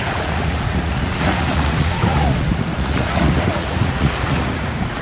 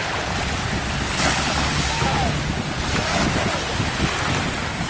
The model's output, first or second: first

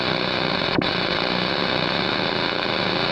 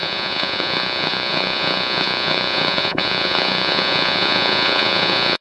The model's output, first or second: second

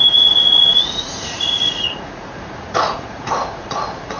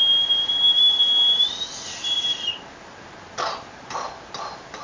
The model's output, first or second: first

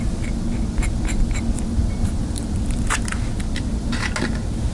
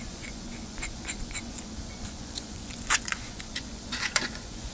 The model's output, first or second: second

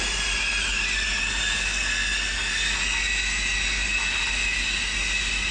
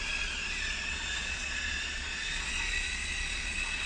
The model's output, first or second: second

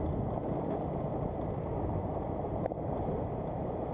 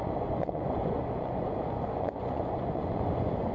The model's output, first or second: second